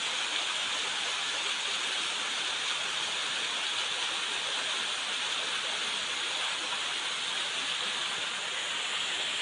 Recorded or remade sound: recorded